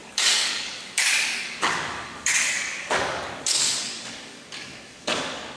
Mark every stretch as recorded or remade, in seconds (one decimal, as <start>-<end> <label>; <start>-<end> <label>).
0.0-5.6 remade